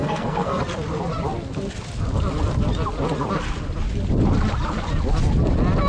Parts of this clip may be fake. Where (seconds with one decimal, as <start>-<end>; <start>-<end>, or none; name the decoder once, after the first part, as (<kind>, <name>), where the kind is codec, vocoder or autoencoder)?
0.0-0.6 (codec, SNAC)